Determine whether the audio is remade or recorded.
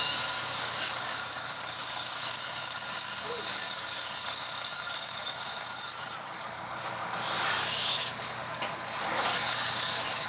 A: remade